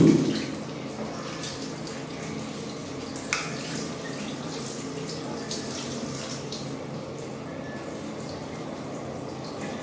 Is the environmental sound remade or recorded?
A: recorded